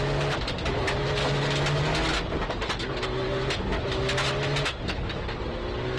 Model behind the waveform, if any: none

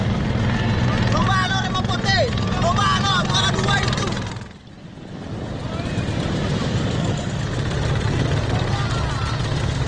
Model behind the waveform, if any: none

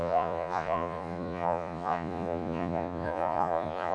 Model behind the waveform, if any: vocoder, Vocos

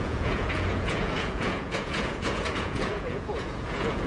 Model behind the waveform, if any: vocoder, Vocos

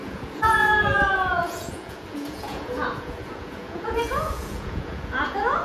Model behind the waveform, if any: vocoder, Vocos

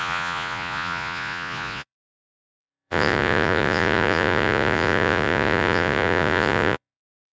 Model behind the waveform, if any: vocoder, Vocos